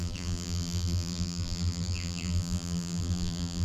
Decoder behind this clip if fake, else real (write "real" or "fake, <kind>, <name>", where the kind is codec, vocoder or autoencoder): fake, vocoder, BigVGAN v2